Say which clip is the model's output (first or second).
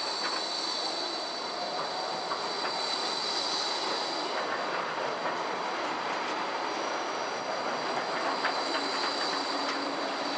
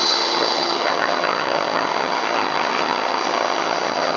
second